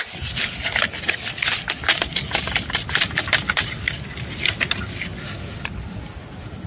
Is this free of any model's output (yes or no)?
yes